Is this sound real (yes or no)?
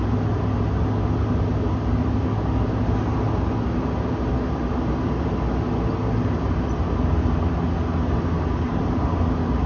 yes